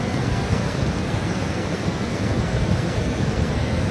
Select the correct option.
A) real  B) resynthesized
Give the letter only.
B